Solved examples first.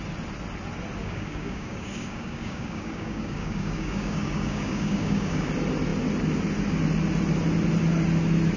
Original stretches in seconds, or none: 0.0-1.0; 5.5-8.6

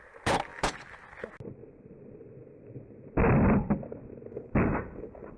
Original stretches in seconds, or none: 0.0-0.5; 1.0-1.6; 4.1-5.4

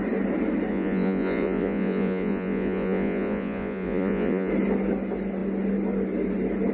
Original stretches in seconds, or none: 0.0-0.7; 4.5-6.7

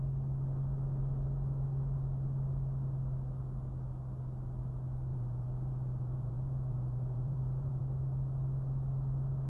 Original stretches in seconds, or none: 0.0-5.1; 7.8-9.5

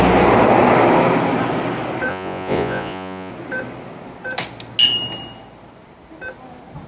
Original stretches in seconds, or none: 0.0-2.1; 3.3-6.9